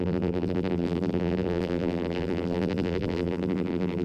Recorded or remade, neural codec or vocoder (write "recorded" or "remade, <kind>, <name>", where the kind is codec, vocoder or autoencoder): remade, vocoder, BigVGAN v2